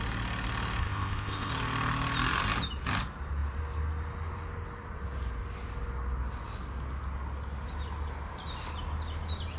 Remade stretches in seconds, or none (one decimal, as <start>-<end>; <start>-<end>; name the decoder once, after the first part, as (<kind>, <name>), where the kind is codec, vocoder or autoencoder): 0.8-1.5 (codec, ZipCodec)